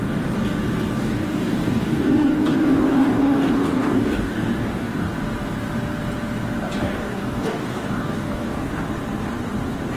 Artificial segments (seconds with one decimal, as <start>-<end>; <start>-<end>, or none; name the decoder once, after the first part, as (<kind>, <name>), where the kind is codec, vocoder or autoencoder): 1.0-5.1 (codec, DAC); 6.8-8.7